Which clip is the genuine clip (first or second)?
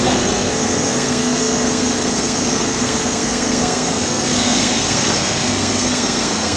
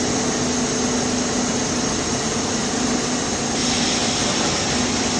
second